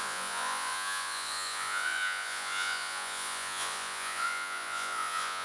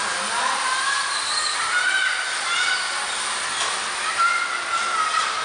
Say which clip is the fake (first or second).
first